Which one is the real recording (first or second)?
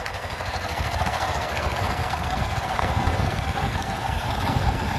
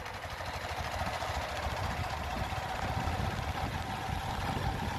second